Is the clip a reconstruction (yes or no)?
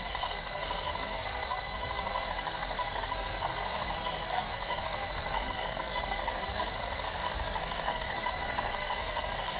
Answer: yes